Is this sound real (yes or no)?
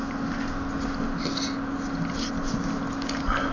yes